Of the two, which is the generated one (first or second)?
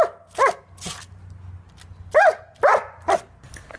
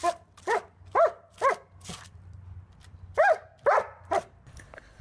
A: second